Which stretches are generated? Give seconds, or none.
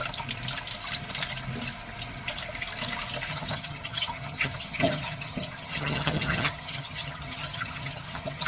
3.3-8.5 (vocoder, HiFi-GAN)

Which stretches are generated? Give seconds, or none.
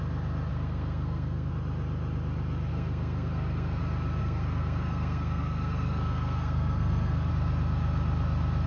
0.5-1.5 (codec, SNAC); 2.7-3.8; 4.2-7.3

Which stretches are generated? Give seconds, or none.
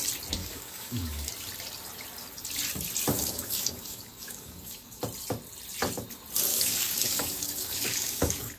0.4-1.3 (codec, DAC); 3.1-5.0; 6.5-8.6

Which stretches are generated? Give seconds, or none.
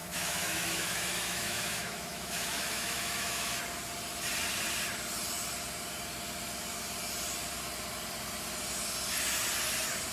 0.0-3.6 (autoencoder, DAC-VAE)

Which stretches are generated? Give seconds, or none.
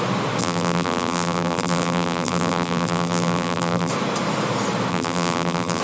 0.4-3.9 (vocoder, BigVGAN v2); 4.9-5.8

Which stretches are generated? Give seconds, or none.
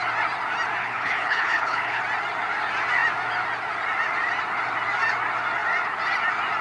0.8-2.0 (codec, HILCodec)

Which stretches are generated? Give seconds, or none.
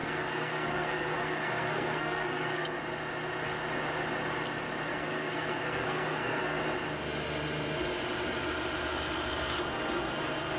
0.0-2.8 (codec, SNAC); 4.9-6.6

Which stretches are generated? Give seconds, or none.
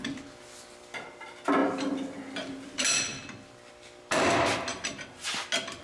none